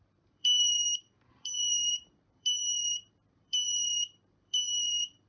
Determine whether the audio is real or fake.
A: fake